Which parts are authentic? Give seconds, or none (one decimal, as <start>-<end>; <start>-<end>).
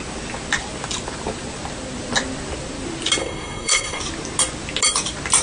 0.0-3.2; 4.0-5.4